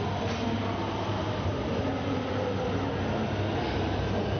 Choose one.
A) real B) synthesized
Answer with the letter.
A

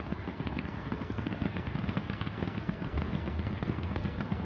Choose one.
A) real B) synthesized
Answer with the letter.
B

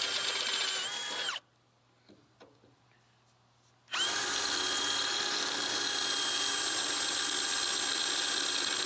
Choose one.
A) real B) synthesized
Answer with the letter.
A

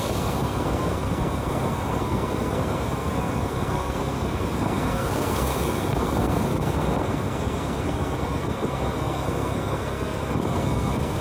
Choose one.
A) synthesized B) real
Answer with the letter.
A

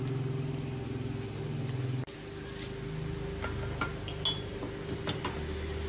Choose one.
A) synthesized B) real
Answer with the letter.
B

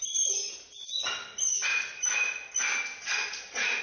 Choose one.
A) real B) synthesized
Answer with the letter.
A